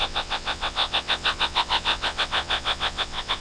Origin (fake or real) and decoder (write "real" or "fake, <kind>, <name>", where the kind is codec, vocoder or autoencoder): fake, vocoder, WaveNeXt